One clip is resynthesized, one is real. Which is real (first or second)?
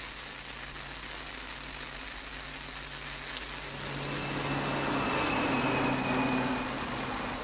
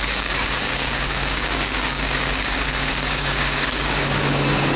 first